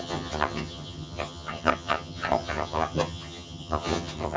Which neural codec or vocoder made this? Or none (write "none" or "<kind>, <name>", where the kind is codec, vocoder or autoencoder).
vocoder, HiFi-GAN